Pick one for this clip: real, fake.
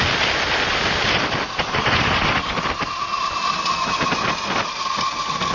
real